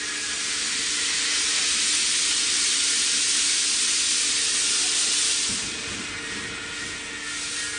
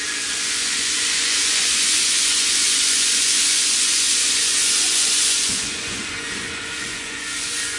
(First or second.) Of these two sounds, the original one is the first